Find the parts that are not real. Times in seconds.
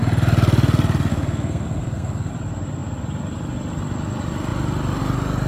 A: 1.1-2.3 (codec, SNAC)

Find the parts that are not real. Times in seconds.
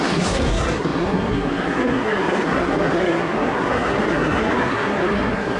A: 0.0-5.6 (codec, SNAC)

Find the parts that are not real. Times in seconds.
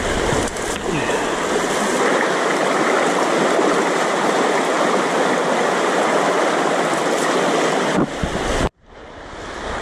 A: none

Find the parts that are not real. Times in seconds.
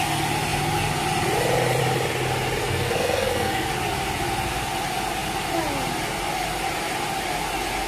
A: 2.6-3.7 (codec, SNAC)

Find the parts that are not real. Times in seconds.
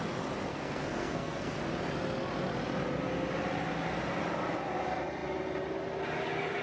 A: 0.5-1.6 (codec, SNAC)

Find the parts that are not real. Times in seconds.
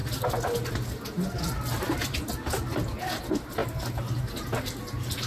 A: none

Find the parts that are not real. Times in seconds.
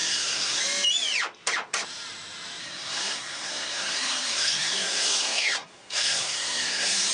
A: 0.0-0.6 (codec, SNAC); 2.6-7.1